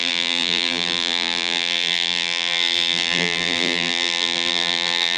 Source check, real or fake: fake